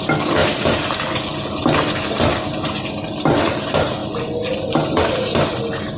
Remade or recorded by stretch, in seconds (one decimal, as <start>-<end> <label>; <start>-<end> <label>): 0.0-6.0 recorded